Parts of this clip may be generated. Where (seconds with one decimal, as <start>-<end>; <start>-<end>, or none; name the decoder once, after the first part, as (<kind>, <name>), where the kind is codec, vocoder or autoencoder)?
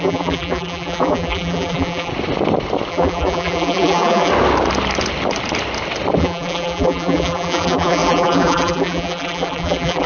0.0-2.1 (vocoder, BigVGAN v2); 2.9-4.3; 6.2-10.1